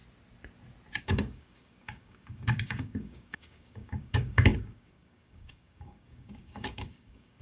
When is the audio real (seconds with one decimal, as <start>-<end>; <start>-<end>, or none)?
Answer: 0.0-1.0